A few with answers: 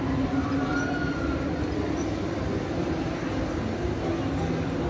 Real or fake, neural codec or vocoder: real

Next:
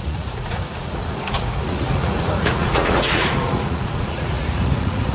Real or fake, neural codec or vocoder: fake, vocoder, Vocos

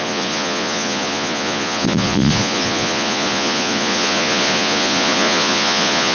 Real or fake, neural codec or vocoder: fake, vocoder, Vocos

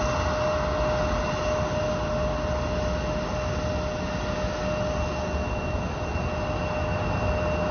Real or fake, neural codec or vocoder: real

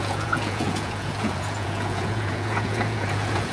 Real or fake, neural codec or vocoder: fake, vocoder, Vocos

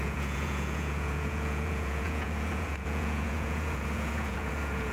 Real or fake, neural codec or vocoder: fake, vocoder, Vocos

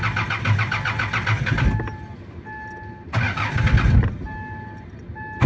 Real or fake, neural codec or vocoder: real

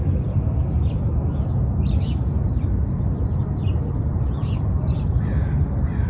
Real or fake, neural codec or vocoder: real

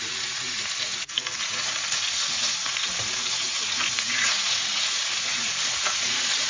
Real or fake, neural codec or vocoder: fake, vocoder, Vocos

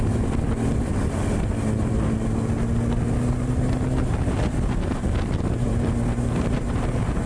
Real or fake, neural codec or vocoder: real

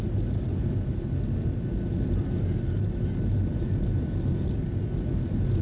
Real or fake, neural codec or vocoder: real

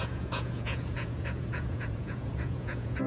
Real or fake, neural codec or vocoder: fake, vocoder, Vocos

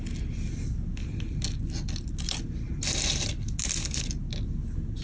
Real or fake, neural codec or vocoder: real